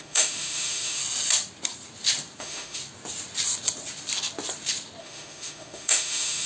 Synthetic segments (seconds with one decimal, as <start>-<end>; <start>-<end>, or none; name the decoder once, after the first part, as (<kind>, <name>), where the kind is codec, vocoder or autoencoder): 0.0-1.0 (autoencoder, DAC-VAE); 2.4-2.8; 5.0-6.5